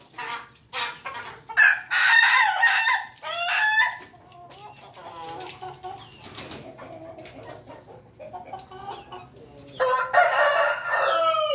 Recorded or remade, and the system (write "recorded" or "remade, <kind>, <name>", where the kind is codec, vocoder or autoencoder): recorded